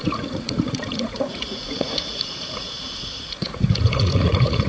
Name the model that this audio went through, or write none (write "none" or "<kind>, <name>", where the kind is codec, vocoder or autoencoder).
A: vocoder, Vocos